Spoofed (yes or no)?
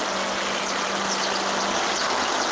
no